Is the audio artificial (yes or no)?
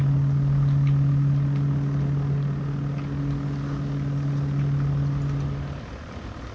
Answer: no